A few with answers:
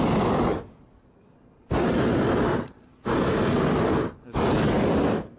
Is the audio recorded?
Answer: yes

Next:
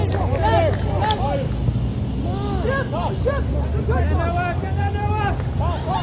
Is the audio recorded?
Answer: yes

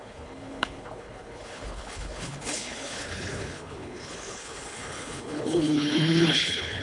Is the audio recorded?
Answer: no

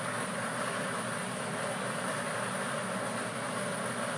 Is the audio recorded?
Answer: yes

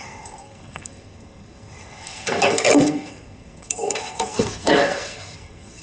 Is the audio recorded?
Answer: no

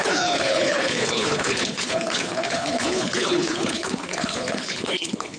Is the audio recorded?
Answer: no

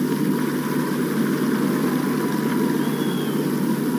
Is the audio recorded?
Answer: yes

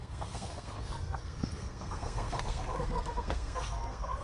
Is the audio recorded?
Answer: no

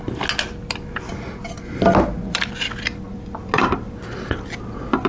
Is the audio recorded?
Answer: yes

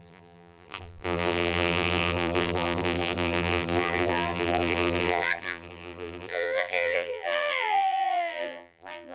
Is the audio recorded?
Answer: no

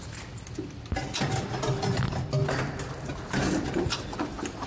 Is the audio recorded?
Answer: yes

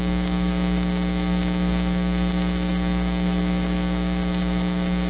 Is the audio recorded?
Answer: no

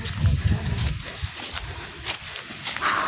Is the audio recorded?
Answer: yes